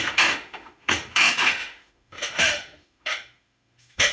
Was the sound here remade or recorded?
remade